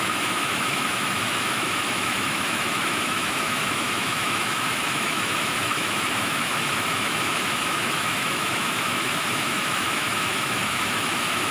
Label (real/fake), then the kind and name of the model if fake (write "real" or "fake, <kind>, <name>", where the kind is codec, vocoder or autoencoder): fake, autoencoder, DAC-VAE